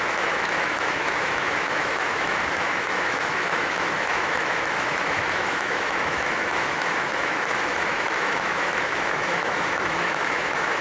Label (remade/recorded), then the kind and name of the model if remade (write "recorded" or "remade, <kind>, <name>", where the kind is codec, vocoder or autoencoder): remade, autoencoder, DAC-VAE